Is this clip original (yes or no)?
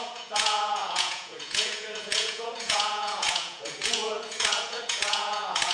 no